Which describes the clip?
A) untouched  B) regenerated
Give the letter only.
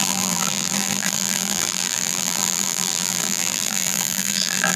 B